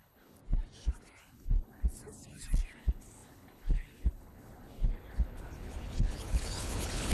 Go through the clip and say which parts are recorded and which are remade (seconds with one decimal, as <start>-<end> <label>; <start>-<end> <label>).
0.0-0.4 remade; 0.4-1.2 recorded; 1.2-2.0 remade; 2.0-2.8 recorded; 2.8-7.1 remade

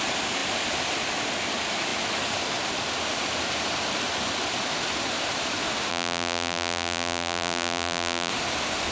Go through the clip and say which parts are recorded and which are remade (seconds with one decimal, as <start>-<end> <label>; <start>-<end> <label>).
0.0-5.9 recorded; 5.9-8.3 remade; 8.3-8.9 recorded

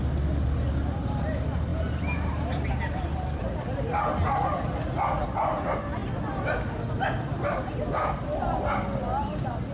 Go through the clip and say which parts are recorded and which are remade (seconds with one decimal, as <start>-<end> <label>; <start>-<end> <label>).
0.0-9.7 recorded

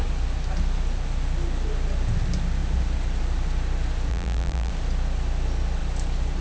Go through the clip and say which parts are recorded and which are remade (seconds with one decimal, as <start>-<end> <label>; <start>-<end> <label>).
0.0-4.1 recorded; 4.1-4.7 remade; 4.7-6.4 recorded

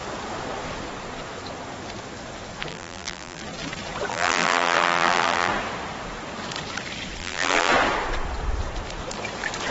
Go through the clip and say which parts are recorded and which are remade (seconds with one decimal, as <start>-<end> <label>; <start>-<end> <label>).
0.0-2.7 recorded; 2.7-3.4 remade; 3.4-4.1 recorded; 4.1-5.5 remade; 5.5-7.2 recorded; 7.2-7.7 remade; 7.7-9.7 recorded